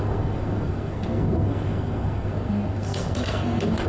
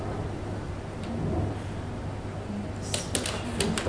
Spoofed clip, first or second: first